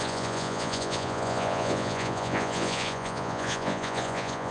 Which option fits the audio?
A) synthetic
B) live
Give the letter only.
A